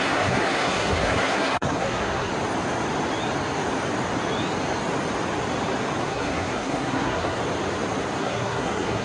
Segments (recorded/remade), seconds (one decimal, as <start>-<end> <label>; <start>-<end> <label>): 0.0-2.3 remade; 2.3-6.0 recorded; 6.0-7.4 remade; 7.4-8.2 recorded; 8.2-9.0 remade